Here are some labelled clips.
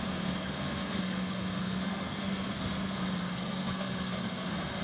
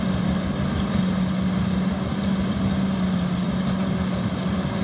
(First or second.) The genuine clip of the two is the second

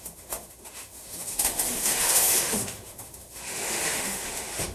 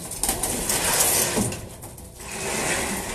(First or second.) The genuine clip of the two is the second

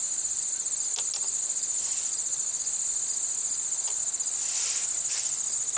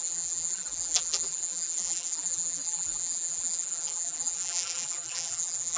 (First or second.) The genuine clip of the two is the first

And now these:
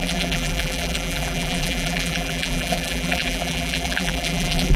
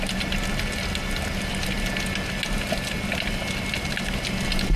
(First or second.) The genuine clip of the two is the second